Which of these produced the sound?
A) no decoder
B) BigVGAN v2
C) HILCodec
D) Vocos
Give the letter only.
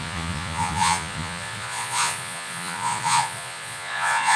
D